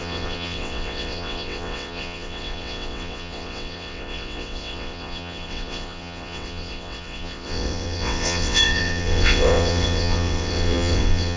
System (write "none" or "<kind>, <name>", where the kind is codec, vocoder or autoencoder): vocoder, WaveNeXt